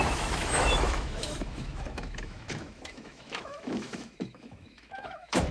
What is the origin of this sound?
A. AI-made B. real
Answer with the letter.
A